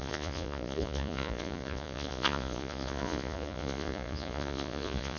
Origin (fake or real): fake